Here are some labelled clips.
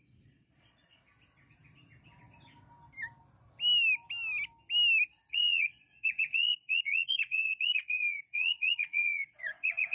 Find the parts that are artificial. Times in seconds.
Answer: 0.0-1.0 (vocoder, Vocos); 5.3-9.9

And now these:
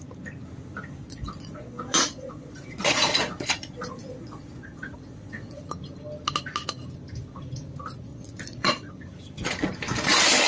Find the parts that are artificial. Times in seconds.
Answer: 1.0-5.6 (vocoder, Vocos); 8.1-8.9